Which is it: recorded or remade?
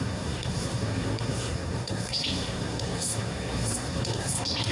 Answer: remade